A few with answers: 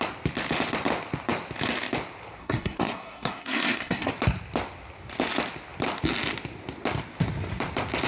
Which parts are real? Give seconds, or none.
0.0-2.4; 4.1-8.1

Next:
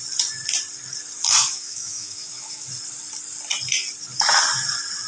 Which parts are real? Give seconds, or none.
0.0-1.4; 2.7-5.1

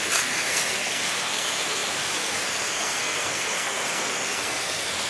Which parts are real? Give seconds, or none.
none

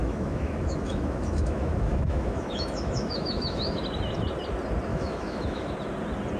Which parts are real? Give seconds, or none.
3.8-4.9; 5.7-6.4

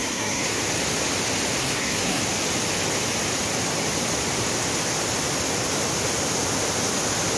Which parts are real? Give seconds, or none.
0.6-1.6; 2.2-7.4

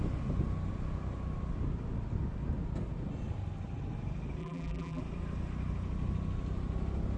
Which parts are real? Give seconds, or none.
0.0-4.4; 5.0-7.2

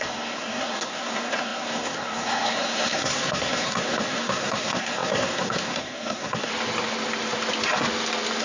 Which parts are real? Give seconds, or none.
6.5-8.4